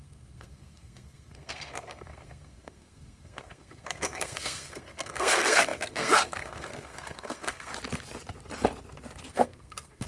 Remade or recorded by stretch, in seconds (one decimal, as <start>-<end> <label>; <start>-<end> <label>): 0.0-7.7 remade; 7.7-9.3 recorded; 9.3-10.1 remade